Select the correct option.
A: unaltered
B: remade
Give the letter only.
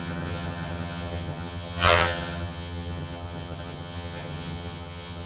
B